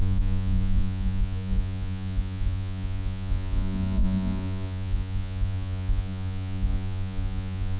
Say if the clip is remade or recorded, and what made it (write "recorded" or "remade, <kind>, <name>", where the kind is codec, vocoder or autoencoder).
remade, vocoder, Vocos